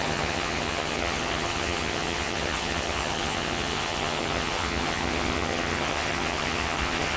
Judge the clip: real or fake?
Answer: fake